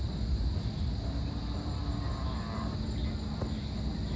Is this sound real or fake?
real